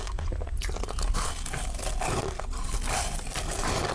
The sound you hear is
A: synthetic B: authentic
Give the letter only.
B